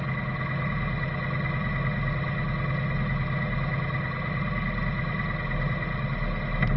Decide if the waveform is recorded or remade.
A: recorded